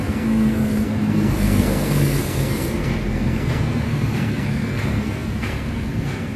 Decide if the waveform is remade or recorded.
remade